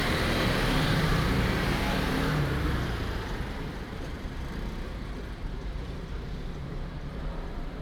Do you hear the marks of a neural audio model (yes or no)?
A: yes